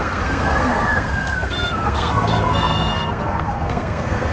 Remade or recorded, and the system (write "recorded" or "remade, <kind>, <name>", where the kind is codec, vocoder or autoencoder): remade, codec, SNAC